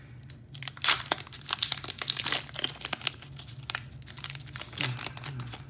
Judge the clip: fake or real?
real